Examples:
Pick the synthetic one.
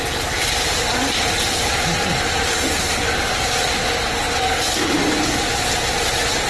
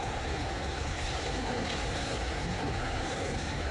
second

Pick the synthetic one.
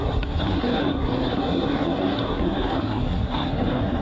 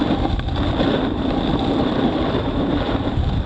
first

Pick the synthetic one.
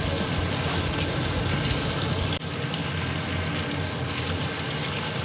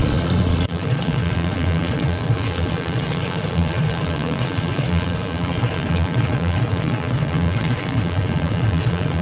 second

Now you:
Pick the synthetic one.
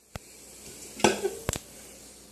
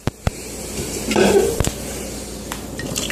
second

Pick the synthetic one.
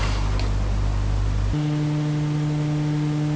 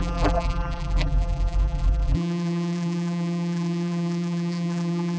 second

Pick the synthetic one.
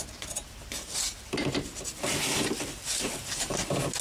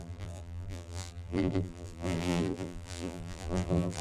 second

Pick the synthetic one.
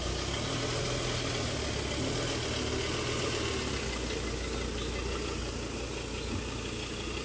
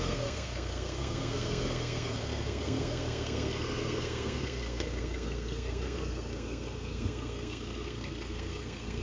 second